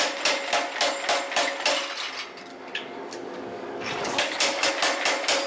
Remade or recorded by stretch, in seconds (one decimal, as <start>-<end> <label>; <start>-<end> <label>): 0.0-2.5 recorded; 2.5-4.7 remade; 4.7-5.5 recorded